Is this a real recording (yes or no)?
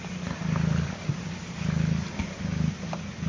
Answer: yes